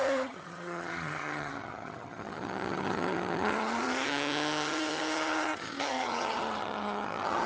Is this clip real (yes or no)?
no